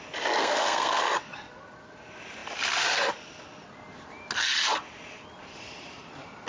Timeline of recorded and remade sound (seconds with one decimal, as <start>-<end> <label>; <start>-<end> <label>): 0.0-0.4 recorded; 0.4-1.0 remade; 1.0-6.5 recorded